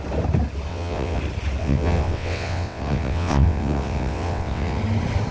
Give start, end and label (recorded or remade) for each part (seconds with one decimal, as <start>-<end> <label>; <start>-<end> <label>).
0.0-0.7 recorded; 0.7-1.2 remade; 1.2-1.6 recorded; 1.6-4.8 remade; 4.8-5.3 recorded